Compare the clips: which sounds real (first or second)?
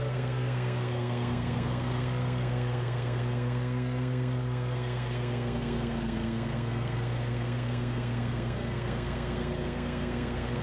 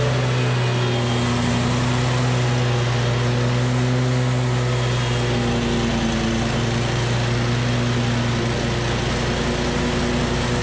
second